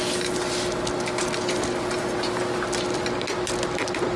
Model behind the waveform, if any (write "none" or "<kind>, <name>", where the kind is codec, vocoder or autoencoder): none